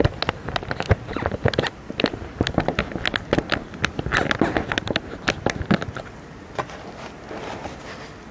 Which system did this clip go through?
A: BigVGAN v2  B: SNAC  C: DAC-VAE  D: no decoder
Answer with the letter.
D